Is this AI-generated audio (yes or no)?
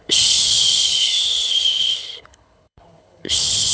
yes